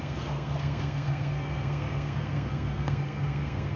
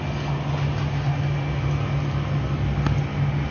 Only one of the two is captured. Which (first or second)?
second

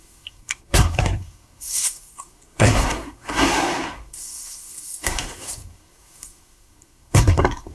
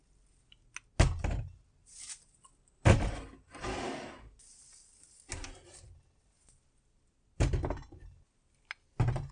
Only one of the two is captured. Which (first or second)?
second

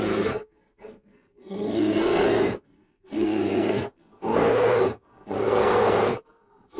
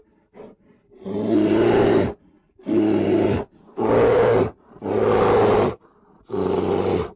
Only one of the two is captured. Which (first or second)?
second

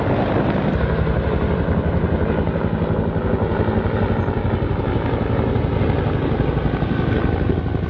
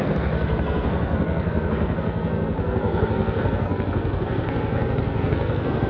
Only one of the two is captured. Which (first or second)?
first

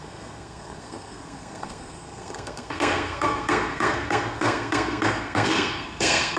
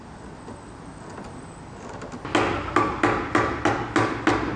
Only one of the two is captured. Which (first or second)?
second